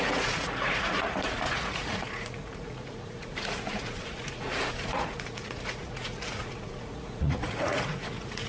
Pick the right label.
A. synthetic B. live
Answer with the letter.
A